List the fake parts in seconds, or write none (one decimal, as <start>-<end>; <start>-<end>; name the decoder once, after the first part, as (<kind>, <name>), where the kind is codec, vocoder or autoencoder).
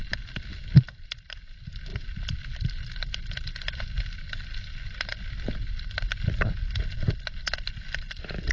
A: none